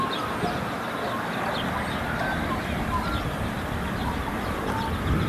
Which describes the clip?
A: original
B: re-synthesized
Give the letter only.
A